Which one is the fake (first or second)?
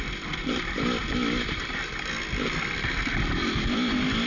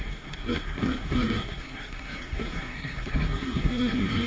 second